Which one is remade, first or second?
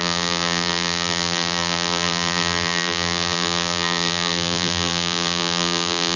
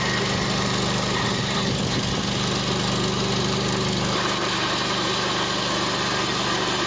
first